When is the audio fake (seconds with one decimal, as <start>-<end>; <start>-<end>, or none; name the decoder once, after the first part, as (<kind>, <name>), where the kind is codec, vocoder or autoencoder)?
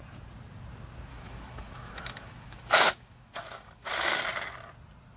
1.1-4.2 (autoencoder, DAC-VAE)